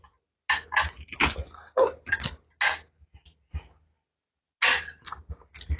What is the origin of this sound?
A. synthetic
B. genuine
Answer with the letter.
B